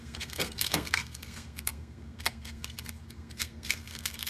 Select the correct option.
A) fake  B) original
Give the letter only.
A